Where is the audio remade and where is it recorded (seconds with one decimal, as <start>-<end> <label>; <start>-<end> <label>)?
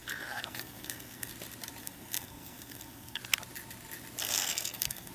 0.0-1.3 remade; 1.3-1.8 recorded; 1.8-3.2 remade; 3.2-4.2 recorded; 4.2-5.1 remade